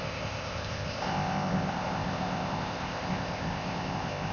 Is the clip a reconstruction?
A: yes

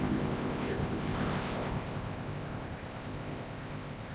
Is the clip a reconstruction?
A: yes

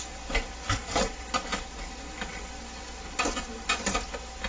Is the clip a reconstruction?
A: no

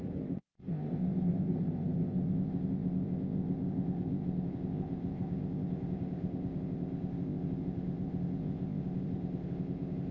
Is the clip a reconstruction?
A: yes